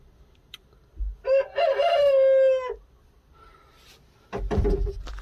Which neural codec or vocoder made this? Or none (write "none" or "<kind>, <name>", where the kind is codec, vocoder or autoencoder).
none